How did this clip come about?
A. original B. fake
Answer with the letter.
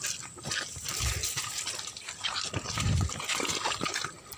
A